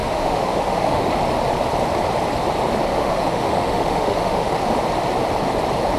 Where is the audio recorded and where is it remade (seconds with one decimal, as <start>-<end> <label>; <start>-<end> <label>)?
0.0-1.1 remade; 1.1-2.9 recorded; 2.9-4.6 remade; 4.6-6.0 recorded